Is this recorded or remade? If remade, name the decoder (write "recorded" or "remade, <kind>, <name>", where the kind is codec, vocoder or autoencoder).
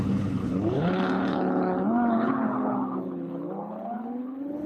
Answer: remade, codec, HILCodec